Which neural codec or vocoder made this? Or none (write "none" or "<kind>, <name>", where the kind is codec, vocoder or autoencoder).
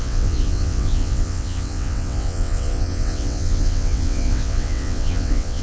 vocoder, WaveNeXt